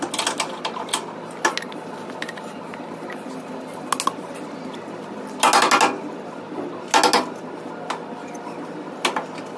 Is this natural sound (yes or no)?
yes